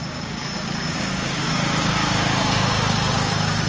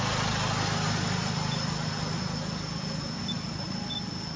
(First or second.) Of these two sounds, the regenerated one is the first